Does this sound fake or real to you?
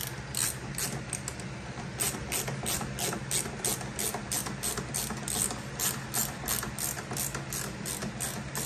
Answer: real